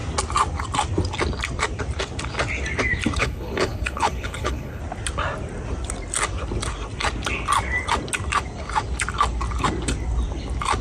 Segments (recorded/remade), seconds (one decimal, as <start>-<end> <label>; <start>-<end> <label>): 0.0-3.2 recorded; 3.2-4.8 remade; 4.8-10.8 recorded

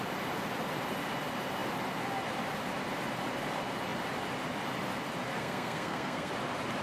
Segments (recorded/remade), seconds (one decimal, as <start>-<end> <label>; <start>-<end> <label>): 0.0-5.4 recorded; 5.4-6.3 remade; 6.3-6.8 recorded

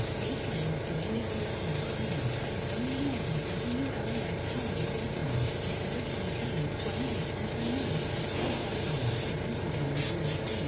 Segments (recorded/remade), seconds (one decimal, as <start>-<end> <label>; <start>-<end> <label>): 0.0-10.7 recorded